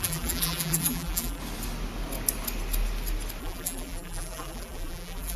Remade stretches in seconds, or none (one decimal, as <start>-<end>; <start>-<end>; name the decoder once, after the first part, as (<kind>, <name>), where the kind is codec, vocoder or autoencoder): 0.0-1.4 (vocoder, BigVGAN v2); 3.4-5.4